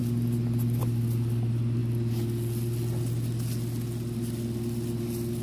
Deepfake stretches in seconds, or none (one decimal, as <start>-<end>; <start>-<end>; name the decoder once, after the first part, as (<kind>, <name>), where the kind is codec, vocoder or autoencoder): none